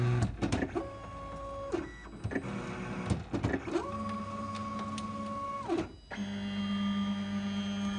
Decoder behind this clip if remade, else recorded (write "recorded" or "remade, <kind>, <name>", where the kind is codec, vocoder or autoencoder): recorded